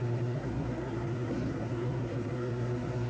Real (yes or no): no